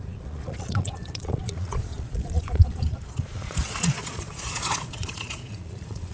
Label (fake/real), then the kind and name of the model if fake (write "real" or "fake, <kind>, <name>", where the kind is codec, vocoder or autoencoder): fake, vocoder, Vocos